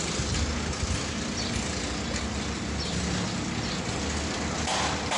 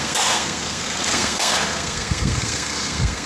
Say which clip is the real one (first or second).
first